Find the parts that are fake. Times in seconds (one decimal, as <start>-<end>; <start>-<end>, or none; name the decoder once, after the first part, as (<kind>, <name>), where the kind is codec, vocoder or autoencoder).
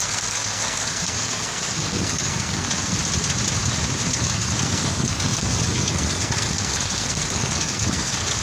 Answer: 0.0-3.0 (codec, SNAC); 4.0-8.4